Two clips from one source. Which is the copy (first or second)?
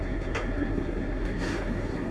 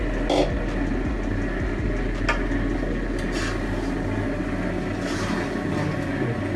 first